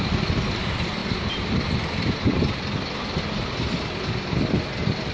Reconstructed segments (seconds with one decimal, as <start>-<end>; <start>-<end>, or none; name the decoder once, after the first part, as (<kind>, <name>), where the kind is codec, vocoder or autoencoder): 0.0-1.0 (vocoder, BigVGAN v2); 3.5-5.1